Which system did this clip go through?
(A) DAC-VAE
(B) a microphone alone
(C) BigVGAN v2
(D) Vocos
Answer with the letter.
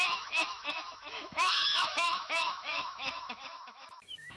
A